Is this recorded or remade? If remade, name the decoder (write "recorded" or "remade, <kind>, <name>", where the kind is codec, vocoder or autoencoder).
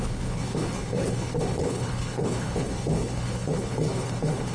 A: remade, codec, HILCodec